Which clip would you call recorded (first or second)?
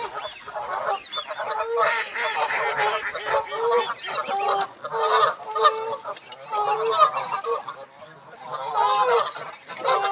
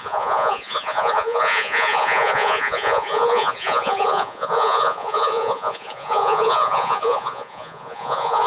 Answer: first